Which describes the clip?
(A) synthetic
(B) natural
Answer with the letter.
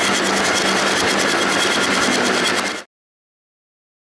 B